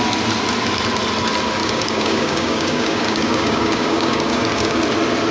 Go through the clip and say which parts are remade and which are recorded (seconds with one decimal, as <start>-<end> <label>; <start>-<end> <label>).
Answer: 0.0-1.6 recorded; 1.6-4.8 remade; 4.8-5.3 recorded